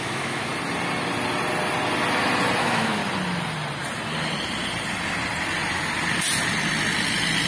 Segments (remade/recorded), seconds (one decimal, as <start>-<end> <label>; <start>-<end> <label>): 0.0-0.5 remade; 0.5-2.6 recorded; 2.6-3.0 remade; 3.0-7.5 recorded